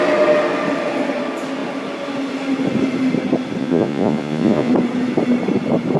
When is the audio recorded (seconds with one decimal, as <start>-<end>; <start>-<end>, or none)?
0.0-3.6; 4.7-6.0